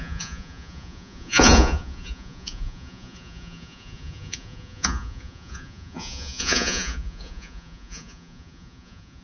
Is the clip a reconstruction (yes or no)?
yes